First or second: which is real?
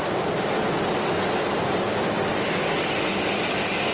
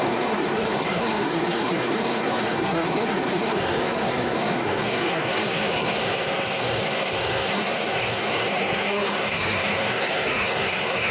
first